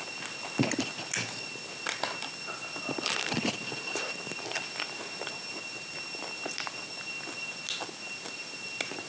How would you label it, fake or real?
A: real